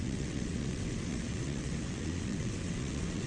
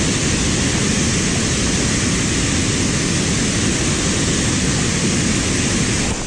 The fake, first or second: first